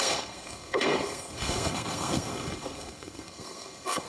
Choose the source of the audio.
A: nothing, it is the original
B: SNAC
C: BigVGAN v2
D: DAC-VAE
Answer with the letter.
B